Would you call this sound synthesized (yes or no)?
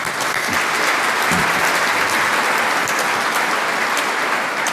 no